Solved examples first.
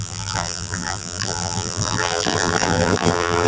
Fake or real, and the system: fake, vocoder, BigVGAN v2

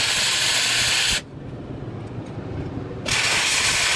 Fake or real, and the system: real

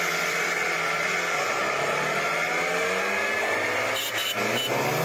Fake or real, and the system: real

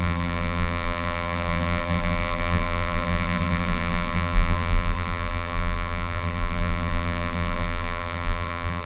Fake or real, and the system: fake, vocoder, BigVGAN v2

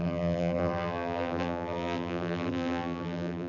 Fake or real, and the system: fake, vocoder, BigVGAN v2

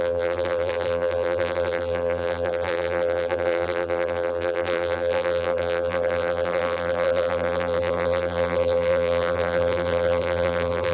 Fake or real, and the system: fake, vocoder, BigVGAN v2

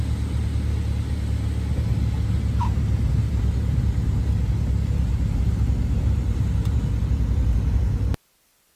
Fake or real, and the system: real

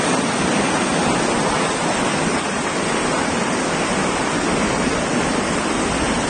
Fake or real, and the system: real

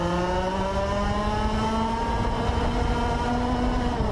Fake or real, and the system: real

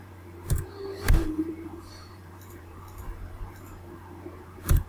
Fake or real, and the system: fake, vocoder, BigVGAN v2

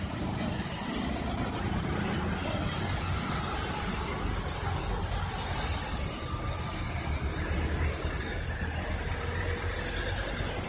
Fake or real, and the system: real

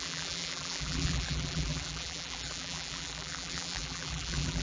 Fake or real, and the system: fake, vocoder, BigVGAN v2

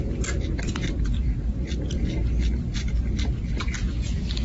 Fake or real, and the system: real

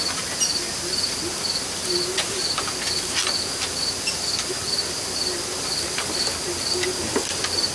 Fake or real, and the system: real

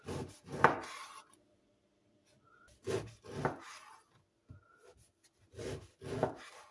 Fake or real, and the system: real